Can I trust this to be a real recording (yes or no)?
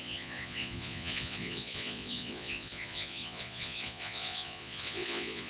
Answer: no